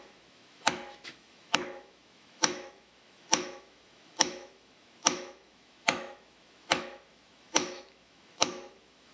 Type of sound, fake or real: fake